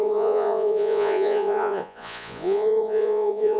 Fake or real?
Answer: fake